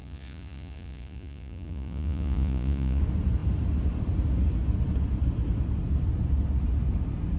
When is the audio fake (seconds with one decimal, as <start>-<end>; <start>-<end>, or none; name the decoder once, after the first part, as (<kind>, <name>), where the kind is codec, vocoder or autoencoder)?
0.0-3.0 (vocoder, Vocos)